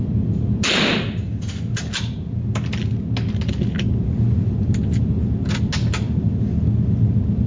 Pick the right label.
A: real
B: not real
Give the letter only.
A